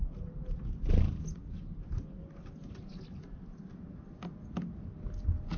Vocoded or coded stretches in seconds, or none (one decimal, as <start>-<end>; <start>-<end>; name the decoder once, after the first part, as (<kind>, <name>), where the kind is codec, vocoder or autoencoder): 0.4-1.0 (vocoder, BigVGAN v2)